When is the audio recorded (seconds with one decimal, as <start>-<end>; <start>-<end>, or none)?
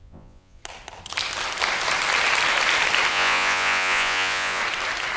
0.6-3.1; 4.6-5.2